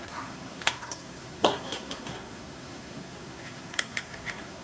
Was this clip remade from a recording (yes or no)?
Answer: yes